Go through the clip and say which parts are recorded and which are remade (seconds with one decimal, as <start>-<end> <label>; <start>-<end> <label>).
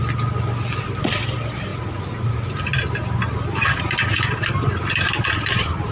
0.0-0.8 recorded; 0.8-1.7 remade; 1.7-3.8 recorded; 3.8-5.9 remade